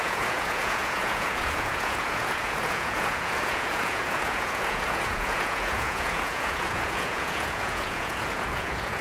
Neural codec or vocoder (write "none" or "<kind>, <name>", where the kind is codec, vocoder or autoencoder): vocoder, Vocos